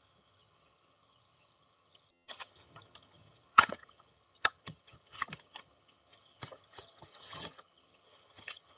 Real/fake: fake